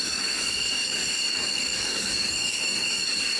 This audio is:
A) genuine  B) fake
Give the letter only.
B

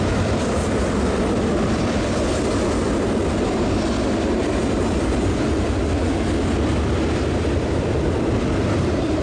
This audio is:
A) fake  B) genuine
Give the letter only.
B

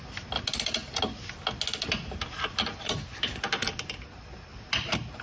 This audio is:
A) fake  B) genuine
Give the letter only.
B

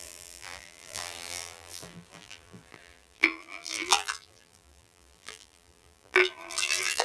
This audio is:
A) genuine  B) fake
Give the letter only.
B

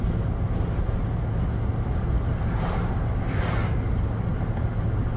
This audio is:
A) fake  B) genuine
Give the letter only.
B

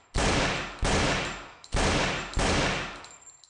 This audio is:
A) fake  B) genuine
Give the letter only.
A